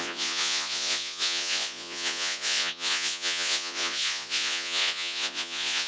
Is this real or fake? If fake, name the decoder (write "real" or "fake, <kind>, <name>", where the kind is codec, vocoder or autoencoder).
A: fake, vocoder, Vocos